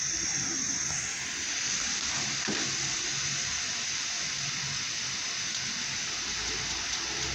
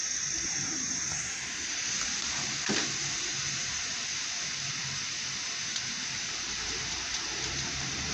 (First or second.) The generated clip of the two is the second